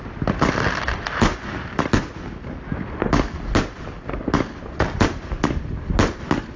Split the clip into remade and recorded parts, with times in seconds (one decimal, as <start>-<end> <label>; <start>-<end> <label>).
0.0-6.6 recorded